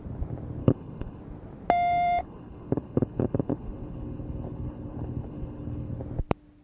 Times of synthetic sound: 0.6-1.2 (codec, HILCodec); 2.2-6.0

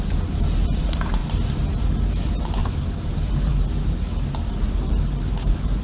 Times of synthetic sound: 0.0-1.2 (vocoder, BigVGAN v2); 1.8-2.6; 3.1-3.5; 4.5-5.8

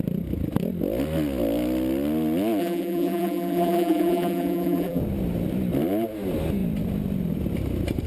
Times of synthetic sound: 2.6-5.0 (vocoder, BigVGAN v2)

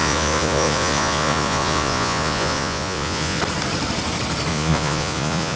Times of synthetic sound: 0.0-3.4 (vocoder, Vocos); 4.5-5.6

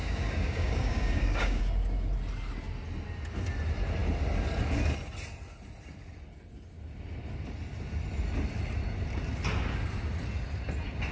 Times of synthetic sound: 0.0-1.6 (codec, DAC)

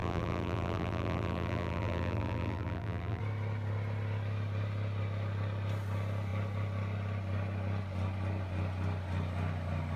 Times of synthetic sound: 0.0-3.2 (vocoder, BigVGAN v2)

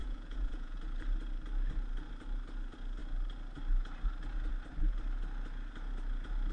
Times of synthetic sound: 0.0-0.8 (vocoder, Vocos)

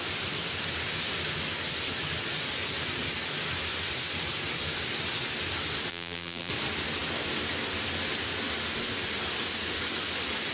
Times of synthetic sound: 5.9-6.5 (vocoder, BigVGAN v2)